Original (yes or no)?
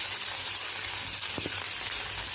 yes